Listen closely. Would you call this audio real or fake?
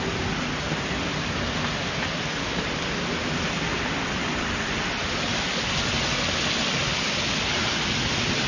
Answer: real